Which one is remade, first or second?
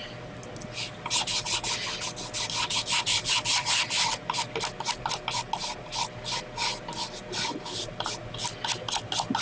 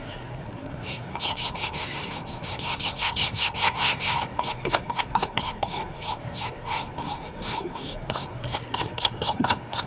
second